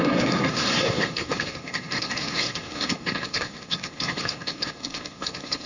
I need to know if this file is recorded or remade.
remade